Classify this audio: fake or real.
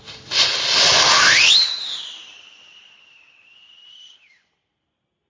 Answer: real